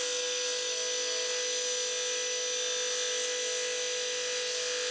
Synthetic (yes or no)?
no